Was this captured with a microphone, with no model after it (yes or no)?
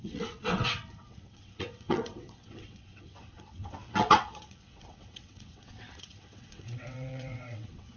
no